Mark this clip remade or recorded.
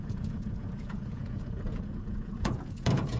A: remade